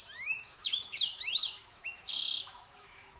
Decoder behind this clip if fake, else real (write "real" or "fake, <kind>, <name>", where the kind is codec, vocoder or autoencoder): fake, autoencoder, DAC-VAE